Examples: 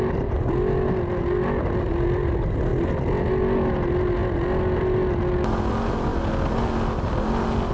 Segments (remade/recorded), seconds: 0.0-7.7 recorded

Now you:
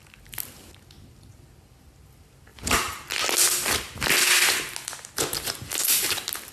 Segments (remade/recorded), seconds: 0.0-6.5 recorded